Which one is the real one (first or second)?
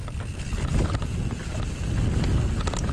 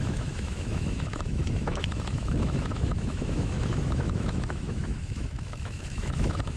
first